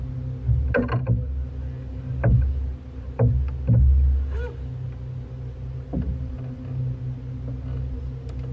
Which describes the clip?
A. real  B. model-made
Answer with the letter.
A